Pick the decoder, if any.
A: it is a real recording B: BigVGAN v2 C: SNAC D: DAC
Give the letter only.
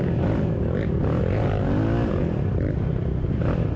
A